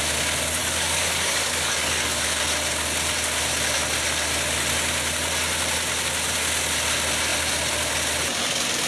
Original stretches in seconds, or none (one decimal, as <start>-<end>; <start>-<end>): 0.0-0.6; 2.4-8.9